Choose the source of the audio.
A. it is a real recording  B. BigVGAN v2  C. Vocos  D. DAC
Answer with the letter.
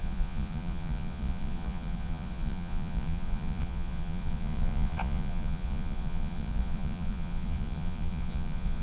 C